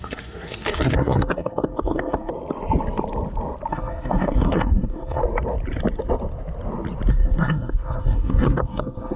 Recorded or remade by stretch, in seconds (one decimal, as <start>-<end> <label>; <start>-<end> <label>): 0.0-2.3 remade; 2.3-3.7 recorded; 3.7-5.2 remade; 5.2-7.1 recorded; 7.1-9.2 remade